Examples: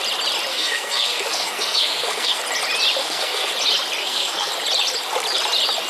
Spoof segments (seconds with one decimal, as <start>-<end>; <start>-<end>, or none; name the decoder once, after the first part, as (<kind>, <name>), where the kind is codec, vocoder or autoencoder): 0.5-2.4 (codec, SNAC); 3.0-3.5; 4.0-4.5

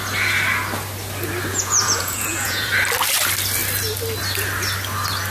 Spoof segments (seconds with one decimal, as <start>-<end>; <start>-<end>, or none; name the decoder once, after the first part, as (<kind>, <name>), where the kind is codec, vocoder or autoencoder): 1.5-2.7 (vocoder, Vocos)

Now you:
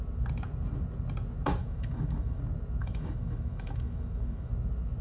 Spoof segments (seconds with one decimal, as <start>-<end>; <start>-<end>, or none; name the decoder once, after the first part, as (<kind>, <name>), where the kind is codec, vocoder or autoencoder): 1.6-2.4 (autoencoder, DAC-VAE); 2.8-4.5

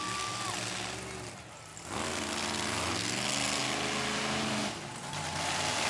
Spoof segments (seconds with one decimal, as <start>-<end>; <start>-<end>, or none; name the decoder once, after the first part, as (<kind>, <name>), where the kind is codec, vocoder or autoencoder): none